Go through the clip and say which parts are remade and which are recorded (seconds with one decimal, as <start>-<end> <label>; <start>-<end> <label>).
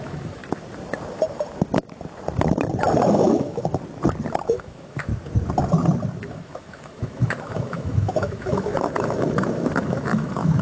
0.0-0.4 remade; 0.4-3.1 recorded; 3.1-3.6 remade; 3.6-4.5 recorded; 4.5-5.1 remade; 5.1-6.2 recorded; 6.2-10.6 remade